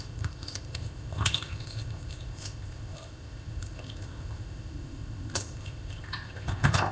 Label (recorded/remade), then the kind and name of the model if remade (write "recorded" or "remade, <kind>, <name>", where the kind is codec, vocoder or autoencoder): remade, codec, ZipCodec